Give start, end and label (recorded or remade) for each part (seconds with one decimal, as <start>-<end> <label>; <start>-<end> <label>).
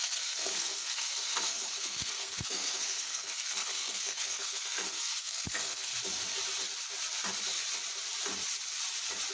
0.0-5.9 remade; 5.9-9.3 recorded